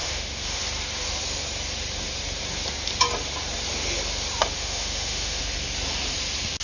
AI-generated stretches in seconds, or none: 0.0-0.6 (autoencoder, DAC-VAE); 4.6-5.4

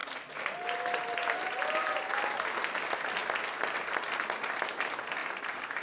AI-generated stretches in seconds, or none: none

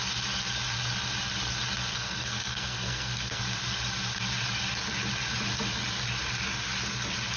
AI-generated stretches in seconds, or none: 1.9-3.4 (codec, SNAC)